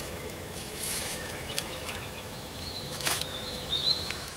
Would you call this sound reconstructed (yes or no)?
yes